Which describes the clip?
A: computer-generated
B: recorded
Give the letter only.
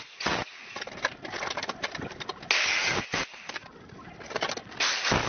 B